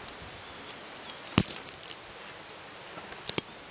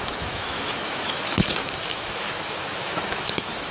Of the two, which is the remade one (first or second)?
second